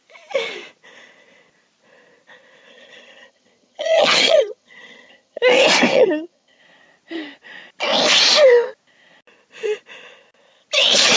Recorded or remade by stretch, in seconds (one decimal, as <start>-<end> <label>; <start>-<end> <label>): 0.0-2.7 recorded; 2.7-5.4 remade; 5.4-5.9 recorded; 5.9-6.6 remade; 6.6-11.2 recorded